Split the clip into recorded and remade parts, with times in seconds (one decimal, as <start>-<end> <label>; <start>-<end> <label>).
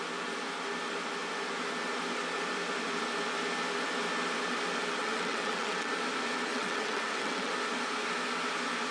0.0-5.0 recorded; 5.0-5.9 remade; 5.9-6.5 recorded; 6.5-7.5 remade; 7.5-8.9 recorded